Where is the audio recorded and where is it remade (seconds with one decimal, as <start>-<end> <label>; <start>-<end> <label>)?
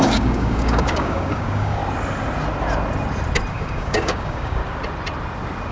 0.0-1.8 remade; 1.8-3.5 recorded; 3.5-4.6 remade; 4.6-5.7 recorded